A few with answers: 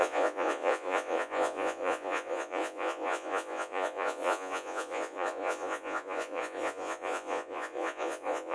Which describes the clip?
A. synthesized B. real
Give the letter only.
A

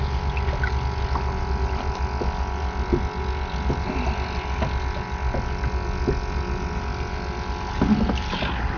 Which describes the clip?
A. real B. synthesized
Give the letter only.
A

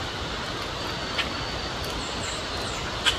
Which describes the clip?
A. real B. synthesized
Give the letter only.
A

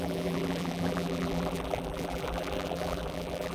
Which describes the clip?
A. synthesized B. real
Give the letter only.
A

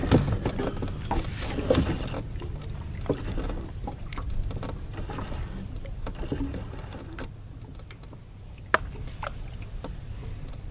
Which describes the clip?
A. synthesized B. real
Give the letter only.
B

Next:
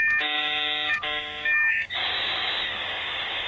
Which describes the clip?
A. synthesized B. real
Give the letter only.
A